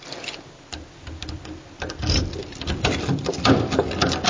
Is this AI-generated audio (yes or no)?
no